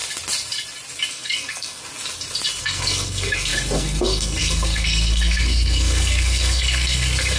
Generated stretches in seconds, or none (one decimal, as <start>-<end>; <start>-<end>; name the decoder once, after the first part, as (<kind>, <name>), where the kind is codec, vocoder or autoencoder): 1.1-1.8 (codec, SNAC); 2.6-7.4